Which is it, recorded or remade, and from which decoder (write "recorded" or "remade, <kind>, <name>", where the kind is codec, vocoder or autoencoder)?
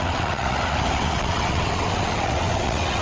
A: remade, vocoder, WaveNeXt